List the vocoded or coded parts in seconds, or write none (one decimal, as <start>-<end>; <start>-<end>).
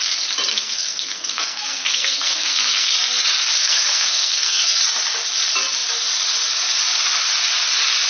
0.5-2.9; 3.6-4.8